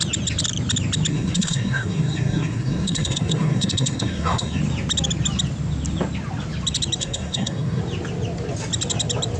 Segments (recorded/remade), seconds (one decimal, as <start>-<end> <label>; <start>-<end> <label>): 0.0-1.1 recorded; 1.1-4.6 remade; 4.6-7.0 recorded; 7.0-7.8 remade; 7.8-9.4 recorded